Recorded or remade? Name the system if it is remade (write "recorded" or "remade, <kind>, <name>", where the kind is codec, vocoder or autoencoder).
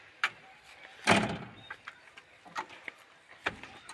recorded